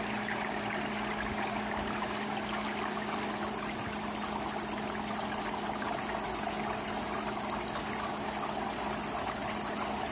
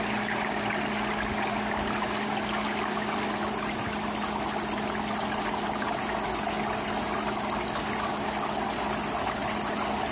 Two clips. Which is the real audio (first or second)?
second